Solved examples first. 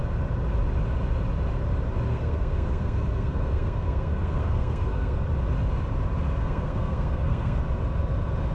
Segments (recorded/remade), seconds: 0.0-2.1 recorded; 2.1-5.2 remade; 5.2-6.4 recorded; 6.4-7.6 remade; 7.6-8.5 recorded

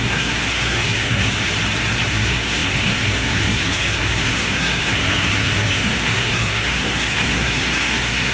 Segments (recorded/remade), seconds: 0.0-1.5 remade; 1.5-2.1 recorded; 2.1-8.3 remade